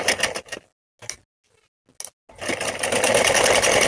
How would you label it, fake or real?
real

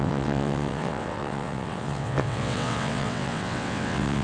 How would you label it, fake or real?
fake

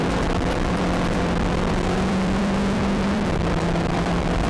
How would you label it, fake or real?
fake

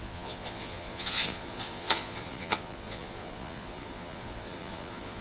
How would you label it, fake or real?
fake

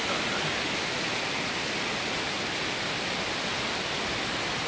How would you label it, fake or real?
real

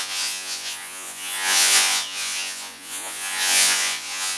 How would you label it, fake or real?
fake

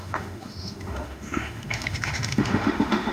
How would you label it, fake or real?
fake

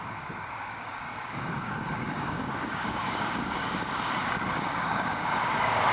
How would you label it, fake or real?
fake